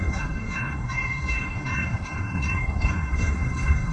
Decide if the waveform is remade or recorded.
remade